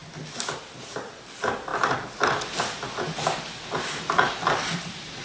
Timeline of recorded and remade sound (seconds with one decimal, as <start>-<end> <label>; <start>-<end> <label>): 0.0-5.2 recorded